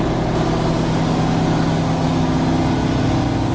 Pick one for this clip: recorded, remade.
recorded